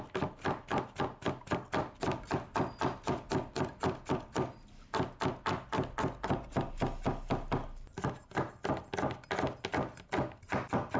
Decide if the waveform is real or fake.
real